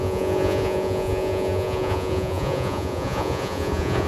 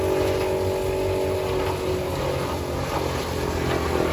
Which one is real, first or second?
second